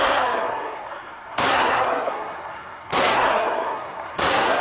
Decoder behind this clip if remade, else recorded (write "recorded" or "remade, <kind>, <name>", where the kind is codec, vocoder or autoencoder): remade, codec, SNAC